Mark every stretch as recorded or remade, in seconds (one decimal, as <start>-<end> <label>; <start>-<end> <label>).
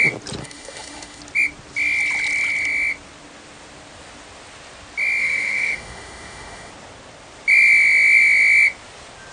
0.0-0.4 recorded; 0.4-1.2 remade; 1.2-5.2 recorded; 5.2-6.7 remade; 6.7-9.3 recorded